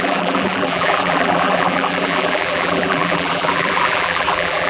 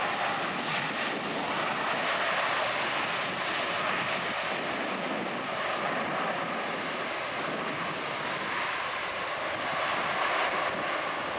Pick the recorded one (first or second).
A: second